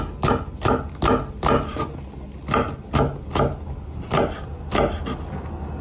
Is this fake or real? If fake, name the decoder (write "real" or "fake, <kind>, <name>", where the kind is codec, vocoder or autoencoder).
real